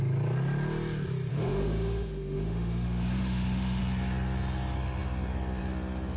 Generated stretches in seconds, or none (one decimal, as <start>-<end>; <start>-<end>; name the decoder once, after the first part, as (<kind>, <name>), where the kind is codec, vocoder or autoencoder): 1.3-3.8 (autoencoder, DAC-VAE)